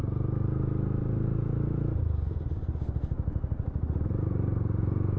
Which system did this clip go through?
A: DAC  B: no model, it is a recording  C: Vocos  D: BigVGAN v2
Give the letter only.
B